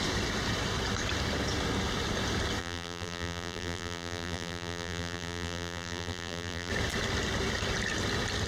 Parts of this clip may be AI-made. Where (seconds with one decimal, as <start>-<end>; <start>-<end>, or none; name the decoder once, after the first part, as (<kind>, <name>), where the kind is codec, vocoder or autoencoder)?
2.6-6.7 (vocoder, BigVGAN v2)

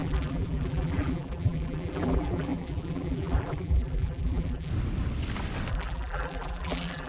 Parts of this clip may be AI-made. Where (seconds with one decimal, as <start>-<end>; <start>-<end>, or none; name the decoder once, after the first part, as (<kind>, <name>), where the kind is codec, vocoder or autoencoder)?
0.0-4.7 (vocoder, BigVGAN v2); 5.7-7.1

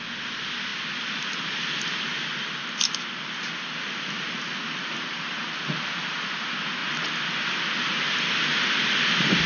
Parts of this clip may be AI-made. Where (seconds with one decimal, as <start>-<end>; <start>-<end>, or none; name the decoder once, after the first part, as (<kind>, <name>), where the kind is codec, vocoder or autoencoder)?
none